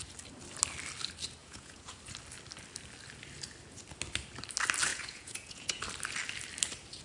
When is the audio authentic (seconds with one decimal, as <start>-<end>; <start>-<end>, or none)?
0.0-1.4; 2.0-4.9; 5.8-7.0